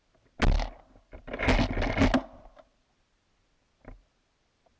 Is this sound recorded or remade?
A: recorded